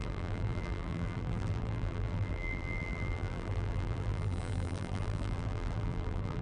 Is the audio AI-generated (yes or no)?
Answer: yes